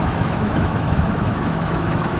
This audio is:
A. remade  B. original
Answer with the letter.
A